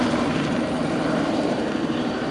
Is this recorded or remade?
remade